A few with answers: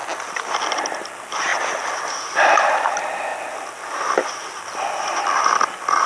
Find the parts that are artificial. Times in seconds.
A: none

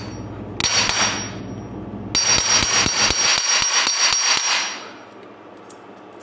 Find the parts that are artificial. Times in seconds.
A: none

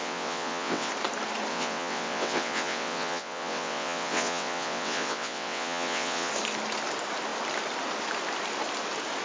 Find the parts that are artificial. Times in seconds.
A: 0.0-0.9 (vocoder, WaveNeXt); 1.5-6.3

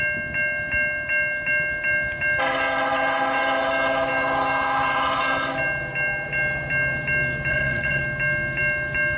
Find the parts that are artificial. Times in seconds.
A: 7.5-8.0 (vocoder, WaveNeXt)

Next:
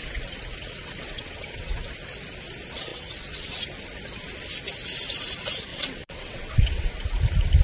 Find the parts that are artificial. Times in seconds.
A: 0.0-1.9 (vocoder, WaveNeXt); 2.9-3.6; 5.7-6.9

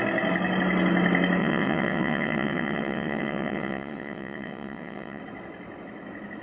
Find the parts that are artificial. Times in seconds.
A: 1.4-5.2 (vocoder, WaveNeXt)

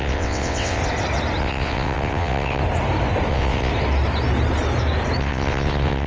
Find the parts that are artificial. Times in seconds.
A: 0.0-0.8 (vocoder, WaveNeXt); 1.4-2.6; 3.3-3.7; 5.2-6.1